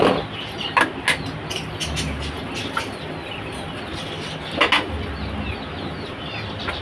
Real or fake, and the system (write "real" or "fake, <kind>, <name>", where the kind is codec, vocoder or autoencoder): real